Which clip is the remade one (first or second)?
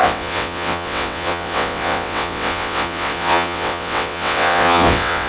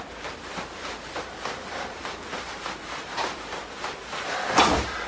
first